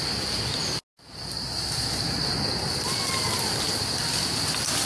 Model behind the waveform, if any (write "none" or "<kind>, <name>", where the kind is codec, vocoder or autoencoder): none